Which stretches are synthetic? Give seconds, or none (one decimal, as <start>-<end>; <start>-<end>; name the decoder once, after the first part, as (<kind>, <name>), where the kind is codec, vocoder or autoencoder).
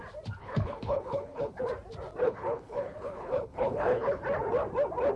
0.4-1.6 (codec, HILCodec); 2.2-4.2